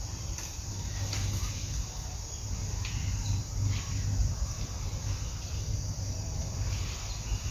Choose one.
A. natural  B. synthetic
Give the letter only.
A